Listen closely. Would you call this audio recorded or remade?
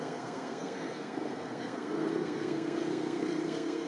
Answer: remade